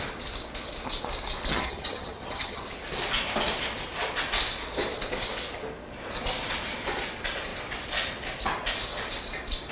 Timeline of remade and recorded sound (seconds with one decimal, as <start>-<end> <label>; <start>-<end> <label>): 0.0-1.5 recorded; 1.5-2.6 remade; 2.6-9.7 recorded